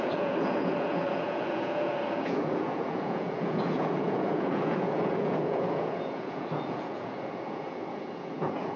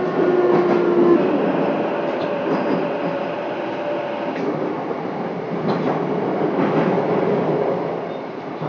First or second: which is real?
second